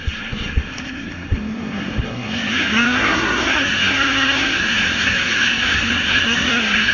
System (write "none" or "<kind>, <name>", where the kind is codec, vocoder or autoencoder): codec, SNAC